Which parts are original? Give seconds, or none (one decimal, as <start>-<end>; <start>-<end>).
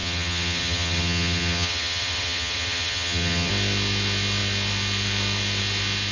3.5-6.1